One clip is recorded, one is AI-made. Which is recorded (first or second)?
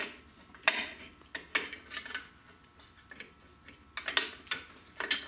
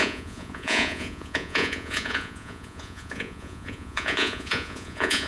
first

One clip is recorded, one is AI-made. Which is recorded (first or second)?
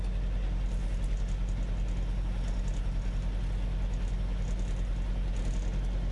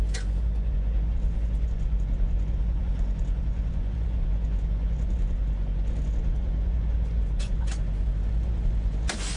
first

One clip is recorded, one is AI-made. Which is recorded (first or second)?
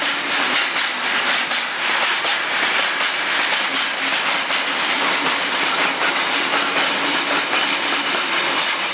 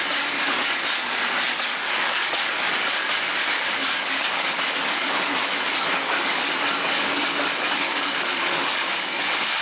first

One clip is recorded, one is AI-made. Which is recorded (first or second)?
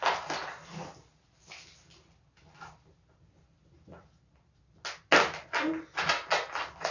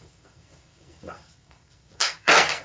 first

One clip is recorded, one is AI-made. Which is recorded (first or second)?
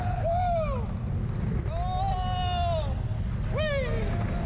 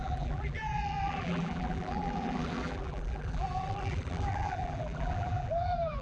first